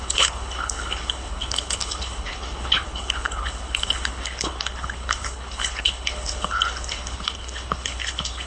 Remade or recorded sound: remade